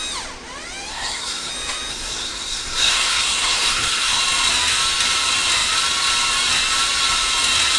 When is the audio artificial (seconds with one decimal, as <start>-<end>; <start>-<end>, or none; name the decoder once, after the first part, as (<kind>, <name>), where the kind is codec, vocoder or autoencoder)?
0.9-1.5 (codec, SNAC); 1.9-4.2

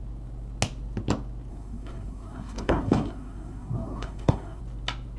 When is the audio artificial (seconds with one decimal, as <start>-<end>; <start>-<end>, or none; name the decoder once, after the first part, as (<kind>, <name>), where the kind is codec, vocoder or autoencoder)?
1.5-4.6 (codec, SNAC)